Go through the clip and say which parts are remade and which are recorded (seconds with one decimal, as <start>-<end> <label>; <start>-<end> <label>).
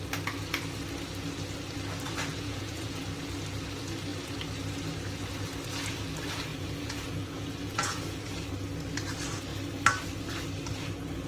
0.0-2.3 recorded; 2.3-3.0 remade; 3.0-6.5 recorded; 6.5-8.2 remade; 8.2-11.3 recorded